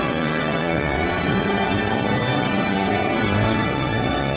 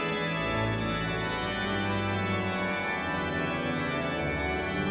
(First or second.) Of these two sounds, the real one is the second